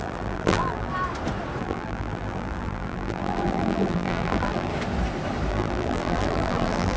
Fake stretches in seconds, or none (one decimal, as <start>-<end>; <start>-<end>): 0.0-0.9; 1.6-4.7; 5.5-7.0